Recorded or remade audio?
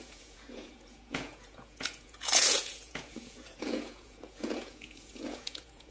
remade